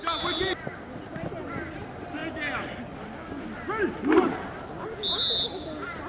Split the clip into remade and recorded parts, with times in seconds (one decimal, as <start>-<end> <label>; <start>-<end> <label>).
0.0-6.1 recorded